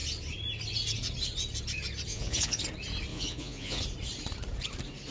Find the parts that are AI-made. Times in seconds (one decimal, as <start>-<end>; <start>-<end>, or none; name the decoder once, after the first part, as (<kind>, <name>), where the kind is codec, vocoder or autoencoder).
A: 2.1-2.6 (vocoder, Vocos); 3.1-3.8

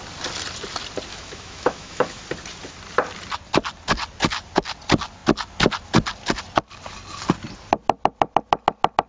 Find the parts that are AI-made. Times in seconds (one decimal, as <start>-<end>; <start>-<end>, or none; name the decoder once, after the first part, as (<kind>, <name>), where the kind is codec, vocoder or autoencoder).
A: 1.1-2.2 (autoencoder, DAC-VAE)